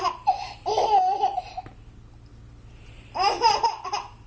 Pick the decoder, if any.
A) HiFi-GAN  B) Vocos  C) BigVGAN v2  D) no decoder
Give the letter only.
D